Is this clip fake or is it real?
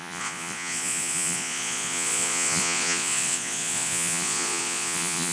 fake